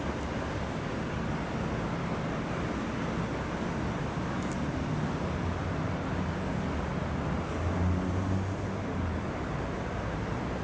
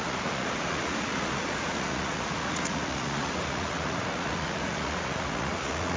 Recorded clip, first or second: first